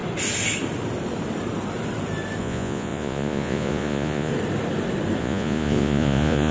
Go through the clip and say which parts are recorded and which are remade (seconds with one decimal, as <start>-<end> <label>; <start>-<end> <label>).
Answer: 0.0-2.4 recorded; 2.4-4.3 remade; 4.3-5.2 recorded; 5.2-6.5 remade

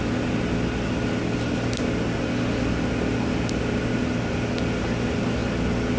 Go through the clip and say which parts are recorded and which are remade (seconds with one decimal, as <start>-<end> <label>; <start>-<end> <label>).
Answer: 0.0-6.0 recorded